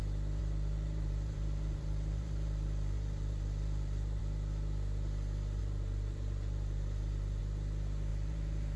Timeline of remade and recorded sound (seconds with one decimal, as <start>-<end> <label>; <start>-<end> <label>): 0.0-0.4 recorded; 0.4-4.2 remade; 4.2-5.6 recorded; 5.6-7.4 remade; 7.4-8.1 recorded; 8.1-8.8 remade